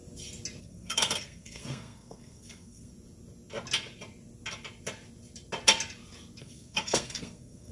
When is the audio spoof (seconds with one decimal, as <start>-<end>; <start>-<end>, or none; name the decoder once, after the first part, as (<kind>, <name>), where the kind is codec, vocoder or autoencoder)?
0.6-2.9 (codec, SNAC); 6.4-7.7